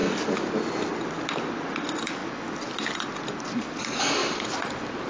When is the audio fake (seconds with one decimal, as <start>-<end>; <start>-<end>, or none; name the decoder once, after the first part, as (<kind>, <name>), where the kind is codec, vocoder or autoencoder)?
4.2-5.1 (vocoder, BigVGAN v2)